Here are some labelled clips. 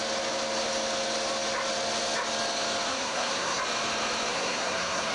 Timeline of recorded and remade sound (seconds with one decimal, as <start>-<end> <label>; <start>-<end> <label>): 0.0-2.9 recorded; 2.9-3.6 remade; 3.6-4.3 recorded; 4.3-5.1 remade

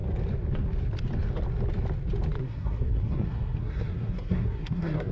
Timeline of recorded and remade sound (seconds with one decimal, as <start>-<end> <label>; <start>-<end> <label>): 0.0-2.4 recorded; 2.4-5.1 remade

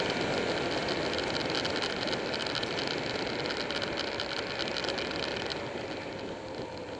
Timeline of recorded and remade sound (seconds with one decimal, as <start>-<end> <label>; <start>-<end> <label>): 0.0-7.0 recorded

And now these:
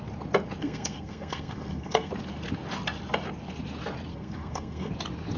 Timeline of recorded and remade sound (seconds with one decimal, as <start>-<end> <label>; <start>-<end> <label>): 0.0-0.6 recorded; 0.6-2.1 remade; 2.1-4.1 recorded; 4.1-4.9 remade; 4.9-5.4 recorded